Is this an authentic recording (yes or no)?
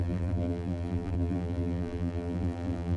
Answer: no